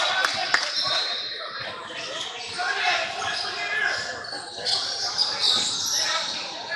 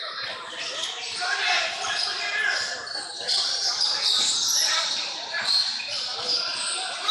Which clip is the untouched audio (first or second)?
first